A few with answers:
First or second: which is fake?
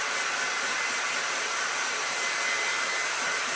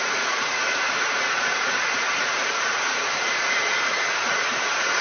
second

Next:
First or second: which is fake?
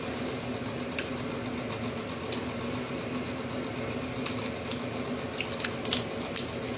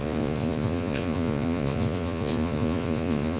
second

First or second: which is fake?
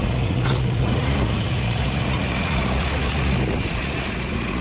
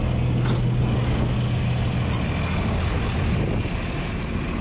first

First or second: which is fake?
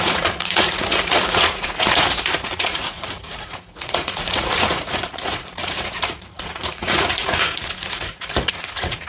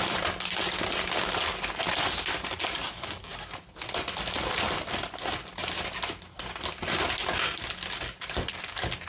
first